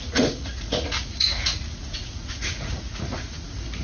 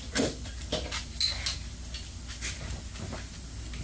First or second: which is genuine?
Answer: second